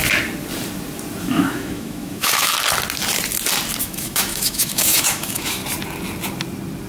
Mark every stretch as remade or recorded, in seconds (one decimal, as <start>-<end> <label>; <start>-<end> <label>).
0.0-1.2 recorded; 1.2-2.5 remade; 2.5-3.8 recorded; 3.8-5.6 remade; 5.6-6.9 recorded